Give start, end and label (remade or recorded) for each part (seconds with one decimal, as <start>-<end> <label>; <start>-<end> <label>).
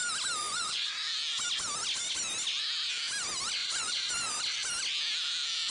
0.0-0.4 recorded; 0.4-0.9 remade; 0.9-3.6 recorded; 3.6-4.1 remade; 4.1-5.7 recorded